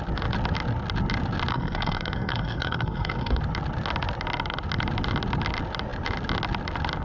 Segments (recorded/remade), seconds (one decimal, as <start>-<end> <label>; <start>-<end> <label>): 0.0-1.5 recorded; 1.5-3.4 remade; 3.4-7.0 recorded